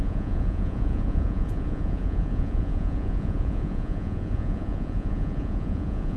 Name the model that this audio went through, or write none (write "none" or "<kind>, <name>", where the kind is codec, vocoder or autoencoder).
vocoder, Vocos